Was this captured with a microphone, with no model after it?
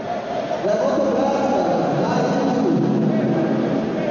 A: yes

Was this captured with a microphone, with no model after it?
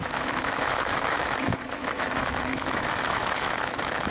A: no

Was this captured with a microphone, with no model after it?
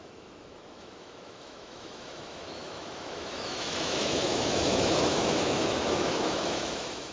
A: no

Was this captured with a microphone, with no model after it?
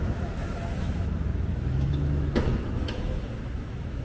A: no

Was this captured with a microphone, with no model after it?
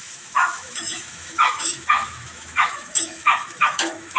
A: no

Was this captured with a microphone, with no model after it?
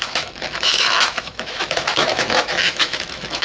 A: no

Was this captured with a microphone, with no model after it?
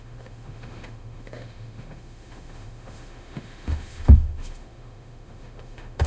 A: no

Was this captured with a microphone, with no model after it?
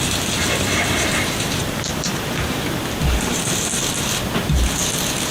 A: yes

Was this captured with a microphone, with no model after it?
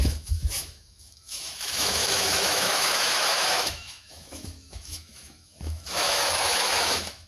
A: no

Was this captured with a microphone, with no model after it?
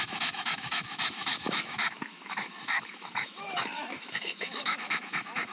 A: no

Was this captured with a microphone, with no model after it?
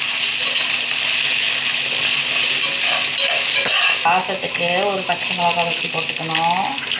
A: yes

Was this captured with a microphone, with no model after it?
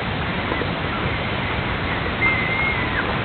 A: yes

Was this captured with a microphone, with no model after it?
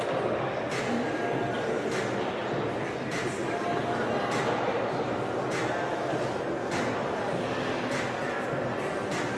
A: yes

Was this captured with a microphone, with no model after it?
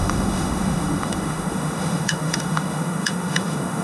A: no